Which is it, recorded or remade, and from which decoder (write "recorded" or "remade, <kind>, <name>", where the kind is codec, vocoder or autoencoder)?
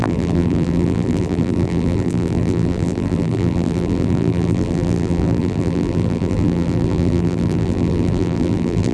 remade, vocoder, BigVGAN v2